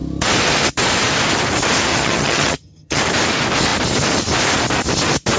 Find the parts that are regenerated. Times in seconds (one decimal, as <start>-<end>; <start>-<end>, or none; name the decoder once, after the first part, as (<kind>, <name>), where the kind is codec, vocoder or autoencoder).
1.9-3.0 (vocoder, HiFi-GAN)